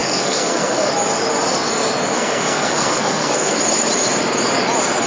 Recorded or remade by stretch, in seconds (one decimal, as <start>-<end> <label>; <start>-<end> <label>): 0.0-0.9 remade; 0.9-2.1 recorded; 2.1-3.6 remade; 3.6-5.1 recorded